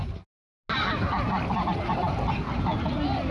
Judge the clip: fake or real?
real